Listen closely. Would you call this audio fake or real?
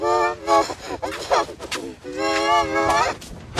real